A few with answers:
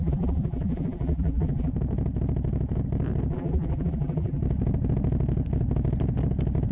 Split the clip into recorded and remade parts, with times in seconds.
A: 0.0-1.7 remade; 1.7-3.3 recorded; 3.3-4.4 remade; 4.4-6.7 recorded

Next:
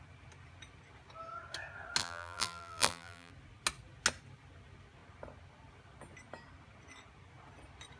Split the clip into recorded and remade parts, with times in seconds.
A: 0.0-2.0 recorded; 2.0-3.3 remade; 3.3-8.0 recorded

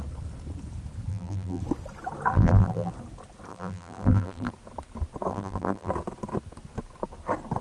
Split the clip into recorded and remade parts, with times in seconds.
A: 0.0-1.1 recorded; 1.1-1.6 remade; 1.6-2.3 recorded; 2.3-2.9 remade; 2.9-3.5 recorded; 3.5-4.5 remade; 4.5-5.3 recorded; 5.3-5.9 remade; 5.9-7.6 recorded

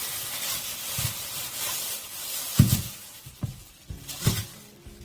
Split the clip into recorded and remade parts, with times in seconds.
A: 0.0-0.7 recorded; 0.7-1.5 remade; 1.5-5.0 recorded